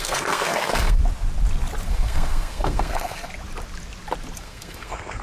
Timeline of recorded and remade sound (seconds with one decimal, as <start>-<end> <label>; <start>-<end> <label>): 0.0-1.0 remade; 1.0-1.9 recorded; 1.9-3.3 remade; 3.3-4.4 recorded; 4.4-5.2 remade